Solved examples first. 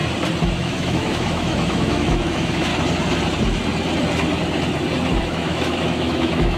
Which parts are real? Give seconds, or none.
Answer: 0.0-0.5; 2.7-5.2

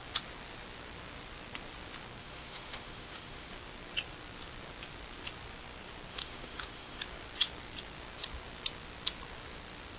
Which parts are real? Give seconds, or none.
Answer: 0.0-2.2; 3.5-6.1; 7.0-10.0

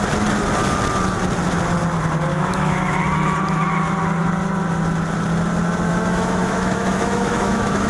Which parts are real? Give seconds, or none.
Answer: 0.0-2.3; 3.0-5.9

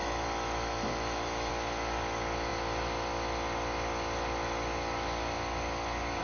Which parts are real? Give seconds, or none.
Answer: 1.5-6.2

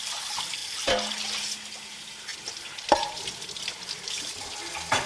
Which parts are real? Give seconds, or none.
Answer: 0.0-5.1

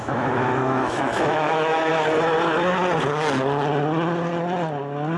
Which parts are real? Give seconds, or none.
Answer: 1.9-5.2

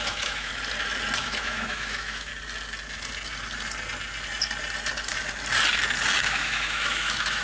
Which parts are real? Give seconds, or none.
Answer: 0.5-1.2; 2.3-6.2

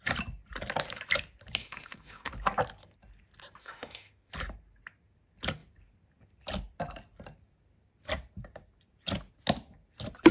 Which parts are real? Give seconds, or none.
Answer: 0.0-1.6; 2.3-3.6; 4.3-10.3